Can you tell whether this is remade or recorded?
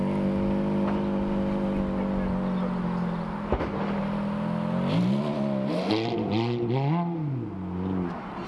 recorded